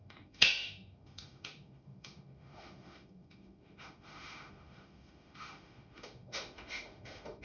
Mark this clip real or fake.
fake